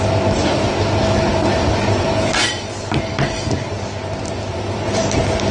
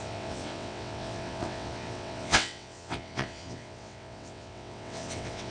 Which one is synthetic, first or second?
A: second